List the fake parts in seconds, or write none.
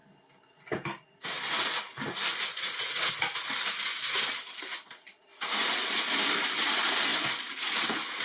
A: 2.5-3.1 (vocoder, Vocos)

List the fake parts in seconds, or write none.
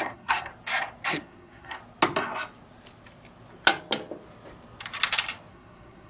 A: 0.0-0.5 (codec, SNAC); 1.1-1.8; 5.5-6.1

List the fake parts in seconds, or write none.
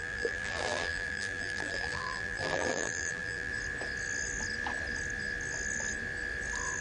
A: 0.0-3.5 (vocoder, BigVGAN v2)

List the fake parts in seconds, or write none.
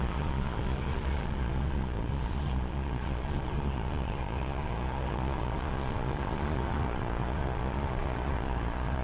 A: 0.0-9.0 (vocoder, Vocos)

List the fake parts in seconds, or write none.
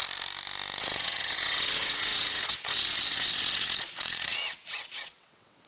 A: 0.8-5.7 (vocoder, WaveNeXt)